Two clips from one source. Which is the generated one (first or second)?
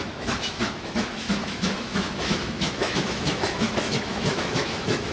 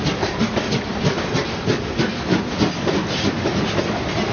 first